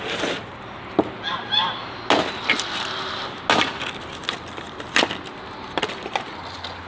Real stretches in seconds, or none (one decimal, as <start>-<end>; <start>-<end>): 0.0-4.2; 5.2-6.9

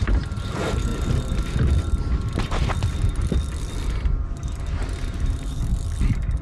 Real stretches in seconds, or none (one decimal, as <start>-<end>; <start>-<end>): 0.9-4.7; 5.7-6.4

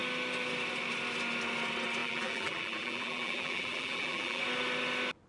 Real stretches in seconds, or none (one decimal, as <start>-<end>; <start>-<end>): 0.0-2.0; 4.4-5.3